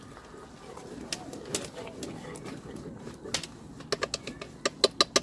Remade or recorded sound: recorded